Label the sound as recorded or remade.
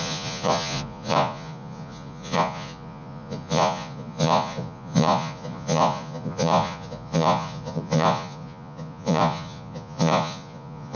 remade